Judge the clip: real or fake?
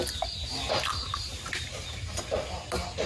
real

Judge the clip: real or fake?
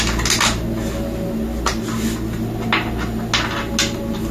real